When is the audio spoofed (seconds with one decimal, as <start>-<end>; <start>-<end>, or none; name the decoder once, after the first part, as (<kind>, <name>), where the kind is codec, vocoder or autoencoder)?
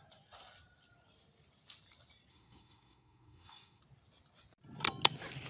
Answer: 2.3-3.8 (codec, SNAC)